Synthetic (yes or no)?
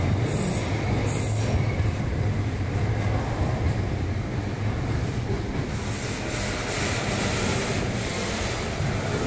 no